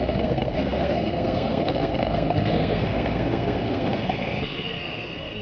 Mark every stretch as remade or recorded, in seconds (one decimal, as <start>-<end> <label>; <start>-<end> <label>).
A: 0.0-5.4 remade